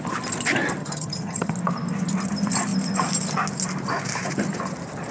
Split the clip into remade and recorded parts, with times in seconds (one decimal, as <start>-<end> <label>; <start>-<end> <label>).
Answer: 0.0-0.8 recorded; 0.8-1.5 remade; 1.5-5.1 recorded